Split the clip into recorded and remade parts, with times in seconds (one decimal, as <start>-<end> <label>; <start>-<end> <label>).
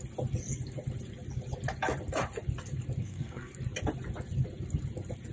0.0-3.0 recorded; 3.0-3.5 remade; 3.5-5.3 recorded